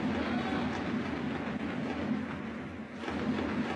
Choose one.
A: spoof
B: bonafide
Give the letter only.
B